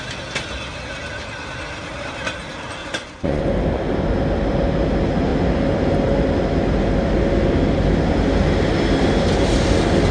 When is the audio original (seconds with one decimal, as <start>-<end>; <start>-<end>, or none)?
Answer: 0.0-2.8; 3.4-10.1